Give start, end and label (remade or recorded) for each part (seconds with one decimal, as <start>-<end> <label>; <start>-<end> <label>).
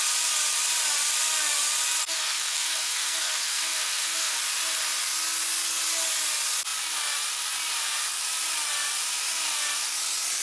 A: 0.0-2.0 recorded; 2.0-4.4 remade; 4.4-10.4 recorded